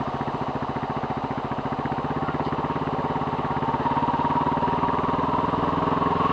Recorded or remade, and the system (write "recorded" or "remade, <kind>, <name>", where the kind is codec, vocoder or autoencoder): recorded